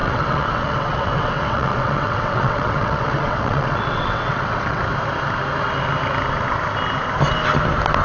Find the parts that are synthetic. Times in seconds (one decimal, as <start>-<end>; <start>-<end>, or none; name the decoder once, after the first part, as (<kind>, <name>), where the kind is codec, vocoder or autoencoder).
0.0-4.8 (vocoder, WaveNeXt)